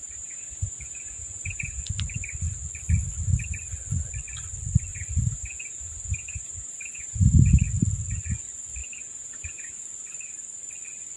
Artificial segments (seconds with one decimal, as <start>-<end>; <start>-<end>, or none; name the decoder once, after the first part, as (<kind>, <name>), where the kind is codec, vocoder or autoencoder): 0.0-1.8 (vocoder, Vocos); 4.9-7.5; 8.8-9.8